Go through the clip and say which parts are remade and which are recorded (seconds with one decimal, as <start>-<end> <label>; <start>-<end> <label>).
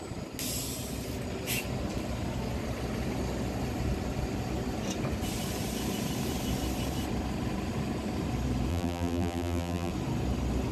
0.0-8.7 recorded; 8.7-9.9 remade; 9.9-10.7 recorded